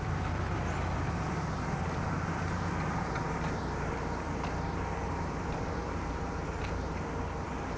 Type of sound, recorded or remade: remade